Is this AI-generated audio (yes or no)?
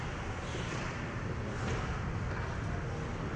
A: no